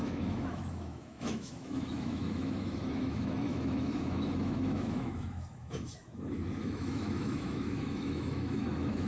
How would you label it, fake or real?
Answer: fake